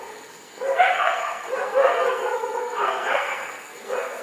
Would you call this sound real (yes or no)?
no